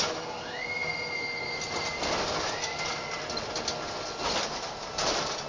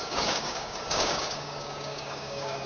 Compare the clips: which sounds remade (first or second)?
second